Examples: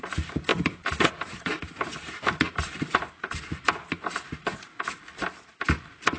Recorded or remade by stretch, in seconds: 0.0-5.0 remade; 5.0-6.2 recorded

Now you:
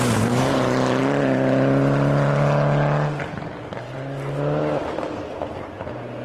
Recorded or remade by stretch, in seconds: 0.0-6.2 recorded

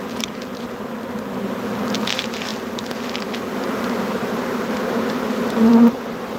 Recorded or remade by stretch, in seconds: 0.0-6.4 recorded

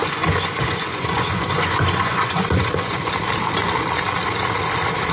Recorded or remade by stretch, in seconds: 0.0-3.1 remade; 3.1-5.1 recorded

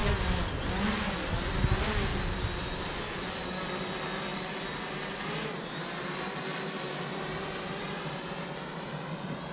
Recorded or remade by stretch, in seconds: 0.0-4.3 recorded; 4.3-8.9 remade; 8.9-9.5 recorded

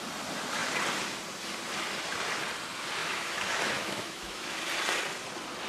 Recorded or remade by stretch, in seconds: 0.0-3.0 recorded; 3.0-4.5 remade; 4.5-5.7 recorded